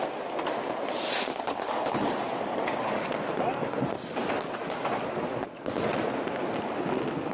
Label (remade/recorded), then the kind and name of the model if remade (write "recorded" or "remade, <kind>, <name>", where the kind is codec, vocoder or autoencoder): recorded